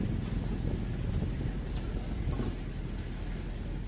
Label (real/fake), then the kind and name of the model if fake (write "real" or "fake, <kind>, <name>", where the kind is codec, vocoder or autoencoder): real